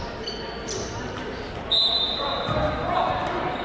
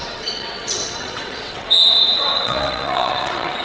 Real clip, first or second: first